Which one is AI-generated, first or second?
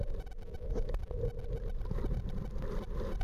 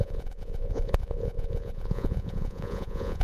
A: second